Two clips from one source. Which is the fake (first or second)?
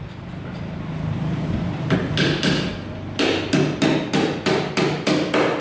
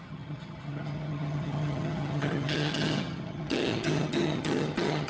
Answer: second